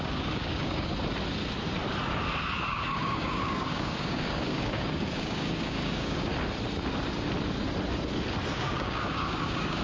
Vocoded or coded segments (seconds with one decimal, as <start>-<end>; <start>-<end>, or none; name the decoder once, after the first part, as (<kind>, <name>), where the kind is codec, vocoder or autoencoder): 0.0-0.9 (codec, DAC); 2.4-6.3; 8.5-9.8